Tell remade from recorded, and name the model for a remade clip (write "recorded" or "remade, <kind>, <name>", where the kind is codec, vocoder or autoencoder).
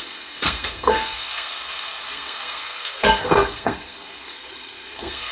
remade, codec, SNAC